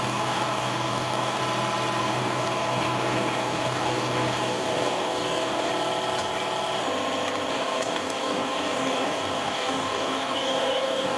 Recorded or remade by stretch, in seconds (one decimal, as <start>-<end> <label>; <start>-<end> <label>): 0.0-1.4 remade; 1.4-2.0 recorded; 2.0-5.7 remade; 5.7-7.5 recorded; 7.5-11.2 remade

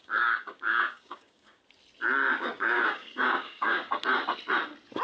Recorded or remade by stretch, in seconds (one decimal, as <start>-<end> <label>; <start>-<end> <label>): 0.0-1.6 remade; 1.6-2.3 recorded; 2.3-3.9 remade; 3.9-5.0 recorded